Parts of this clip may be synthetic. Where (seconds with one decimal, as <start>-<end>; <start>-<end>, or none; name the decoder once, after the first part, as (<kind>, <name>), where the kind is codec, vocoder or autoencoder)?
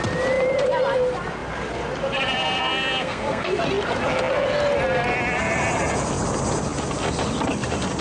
2.6-3.6 (codec, SNAC)